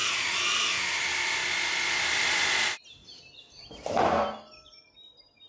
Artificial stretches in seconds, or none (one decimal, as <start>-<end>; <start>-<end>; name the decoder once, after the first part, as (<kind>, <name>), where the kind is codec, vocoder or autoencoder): 0.8-1.4 (vocoder, BigVGAN v2); 3.2-5.5